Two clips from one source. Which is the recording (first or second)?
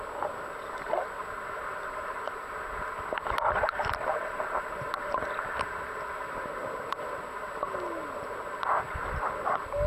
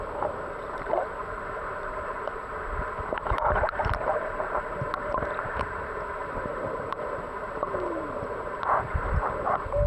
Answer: first